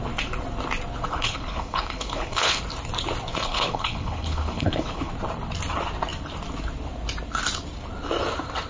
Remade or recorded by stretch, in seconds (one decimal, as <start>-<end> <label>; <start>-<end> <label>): 0.0-1.1 recorded; 1.1-2.6 remade; 2.6-3.3 recorded; 3.3-5.1 remade; 5.1-8.7 recorded